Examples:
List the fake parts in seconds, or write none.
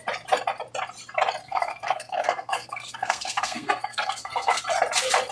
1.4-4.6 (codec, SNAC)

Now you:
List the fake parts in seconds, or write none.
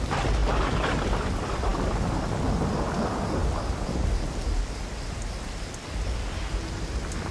none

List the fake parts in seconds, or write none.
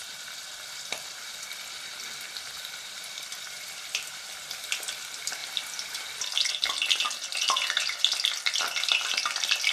none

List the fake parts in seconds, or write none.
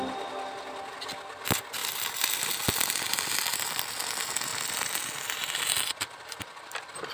1.8-2.4 (vocoder, BigVGAN v2); 4.5-6.4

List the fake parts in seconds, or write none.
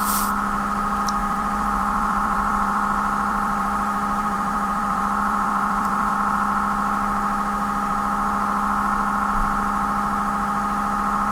1.2-6.1 (vocoder, BigVGAN v2)